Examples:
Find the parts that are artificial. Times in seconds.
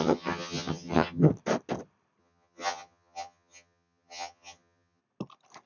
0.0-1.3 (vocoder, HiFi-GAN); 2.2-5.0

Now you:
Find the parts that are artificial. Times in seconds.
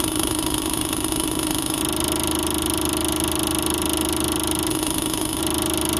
0.0-1.8 (autoencoder, DAC-VAE); 4.7-5.4